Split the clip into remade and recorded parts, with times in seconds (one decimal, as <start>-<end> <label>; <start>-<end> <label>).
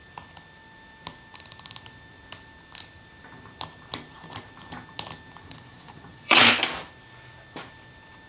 0.0-5.4 recorded; 5.4-6.5 remade; 6.5-8.3 recorded